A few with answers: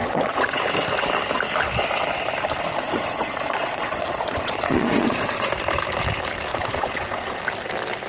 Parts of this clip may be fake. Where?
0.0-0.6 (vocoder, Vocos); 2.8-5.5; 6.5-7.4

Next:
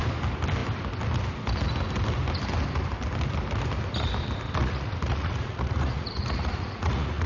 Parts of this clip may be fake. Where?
4.6-7.3 (vocoder, Vocos)

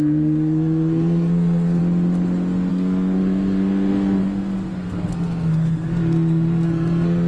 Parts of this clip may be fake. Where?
0.0-1.8 (codec, SNAC); 2.7-7.3

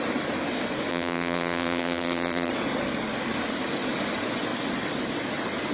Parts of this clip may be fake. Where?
0.9-2.5 (vocoder, BigVGAN v2)

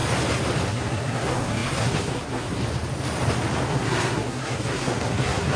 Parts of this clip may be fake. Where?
0.7-2.6 (codec, SNAC); 3.7-5.6